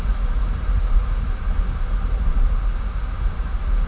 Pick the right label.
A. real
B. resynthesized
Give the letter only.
B